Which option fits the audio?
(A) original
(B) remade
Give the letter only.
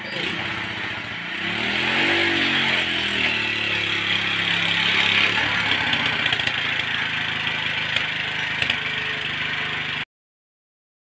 A